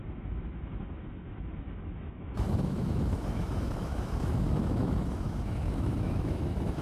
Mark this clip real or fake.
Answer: fake